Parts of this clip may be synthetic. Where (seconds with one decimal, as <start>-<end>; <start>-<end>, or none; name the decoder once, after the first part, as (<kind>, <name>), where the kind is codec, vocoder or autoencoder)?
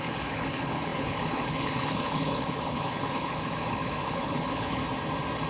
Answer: 0.0-4.8 (codec, HILCodec)